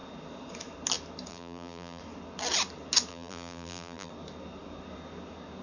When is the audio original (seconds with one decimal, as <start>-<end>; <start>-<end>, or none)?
0.0-1.3; 2.0-3.1; 4.1-5.6